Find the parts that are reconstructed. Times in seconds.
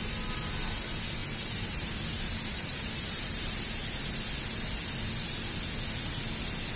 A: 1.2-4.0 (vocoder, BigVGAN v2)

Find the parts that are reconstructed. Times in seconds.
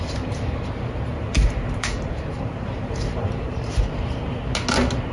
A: 0.0-0.6 (vocoder, BigVGAN v2); 1.1-4.2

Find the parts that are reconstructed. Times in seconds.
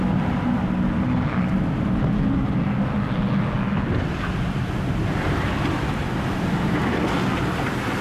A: 6.0-7.0 (vocoder, BigVGAN v2)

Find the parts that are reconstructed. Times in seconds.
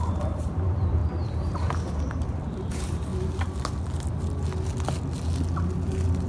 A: 0.0-3.1 (vocoder, BigVGAN v2)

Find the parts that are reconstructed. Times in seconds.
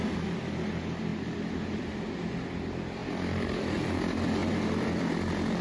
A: 3.0-3.8 (vocoder, BigVGAN v2)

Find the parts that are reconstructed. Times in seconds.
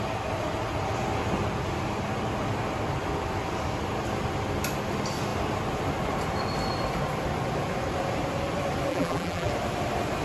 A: 8.9-9.5 (vocoder, BigVGAN v2)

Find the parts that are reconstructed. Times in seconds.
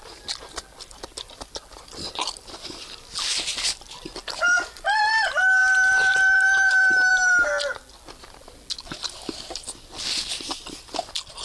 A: 5.6-7.5 (vocoder, BigVGAN v2)